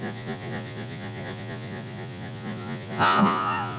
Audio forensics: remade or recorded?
remade